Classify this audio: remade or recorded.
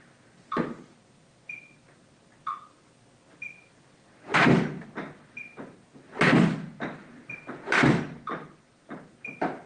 recorded